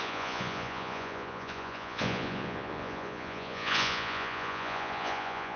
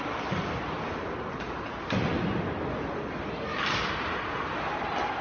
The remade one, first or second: first